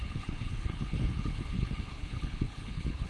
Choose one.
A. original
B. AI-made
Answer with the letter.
B